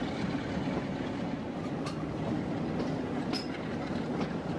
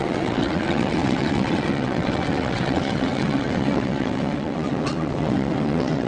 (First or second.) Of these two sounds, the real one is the first